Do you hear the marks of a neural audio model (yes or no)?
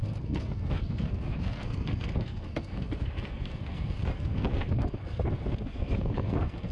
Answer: yes